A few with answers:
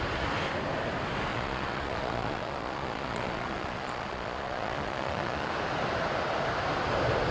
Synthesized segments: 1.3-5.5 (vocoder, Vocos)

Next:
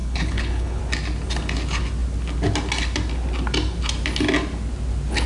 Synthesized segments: 0.0-0.8 (codec, HILCodec)

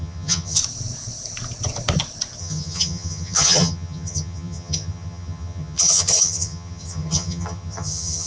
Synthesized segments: 0.0-0.6 (vocoder, HiFi-GAN); 2.4-8.3

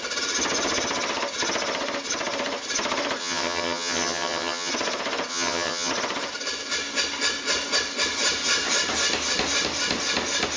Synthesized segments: 3.2-4.7 (vocoder, HiFi-GAN); 5.3-5.9